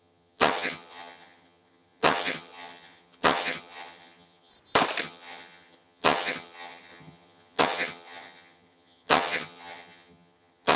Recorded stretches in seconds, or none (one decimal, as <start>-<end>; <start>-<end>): 4.5-5.0